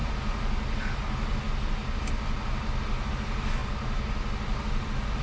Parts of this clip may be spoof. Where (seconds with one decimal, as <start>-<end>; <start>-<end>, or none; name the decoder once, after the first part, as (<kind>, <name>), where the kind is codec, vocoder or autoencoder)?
3.6-4.8 (vocoder, BigVGAN v2)